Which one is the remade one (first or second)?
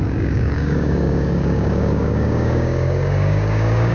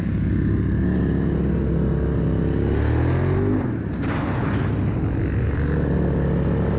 first